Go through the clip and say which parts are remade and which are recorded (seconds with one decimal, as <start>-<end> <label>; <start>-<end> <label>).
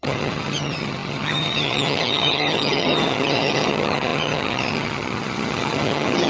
0.0-6.3 remade